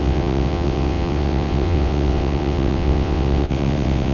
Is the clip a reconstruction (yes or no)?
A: yes